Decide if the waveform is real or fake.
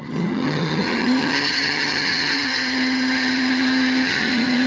fake